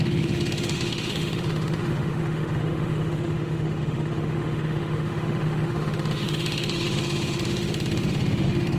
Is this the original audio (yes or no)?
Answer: no